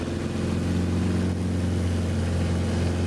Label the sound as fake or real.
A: real